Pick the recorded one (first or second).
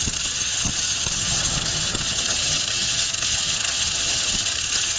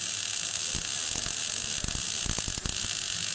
second